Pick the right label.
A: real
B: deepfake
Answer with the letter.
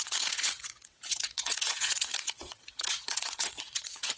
B